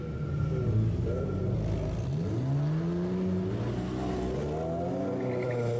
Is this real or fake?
real